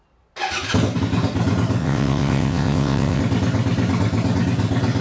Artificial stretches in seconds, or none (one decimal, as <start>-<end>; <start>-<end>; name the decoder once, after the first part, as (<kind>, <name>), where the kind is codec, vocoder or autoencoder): 1.8-3.2 (vocoder, WaveNeXt)